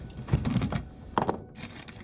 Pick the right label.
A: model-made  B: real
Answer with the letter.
B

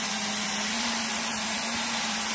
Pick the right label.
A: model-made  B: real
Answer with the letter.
A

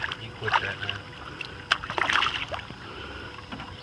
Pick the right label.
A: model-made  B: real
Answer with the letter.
A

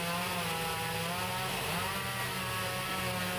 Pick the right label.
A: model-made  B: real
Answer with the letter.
B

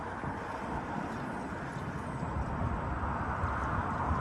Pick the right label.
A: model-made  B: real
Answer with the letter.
B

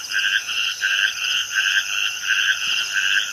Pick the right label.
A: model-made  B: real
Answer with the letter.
B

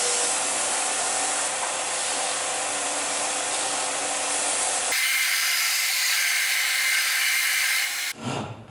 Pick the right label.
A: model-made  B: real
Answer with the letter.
A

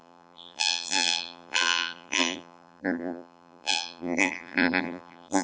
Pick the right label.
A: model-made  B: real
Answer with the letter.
A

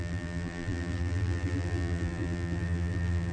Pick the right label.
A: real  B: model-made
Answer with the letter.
B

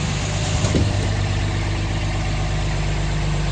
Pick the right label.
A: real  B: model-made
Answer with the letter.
A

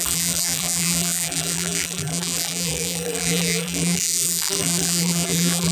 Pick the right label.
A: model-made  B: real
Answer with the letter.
A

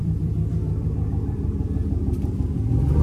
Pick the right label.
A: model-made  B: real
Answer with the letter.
A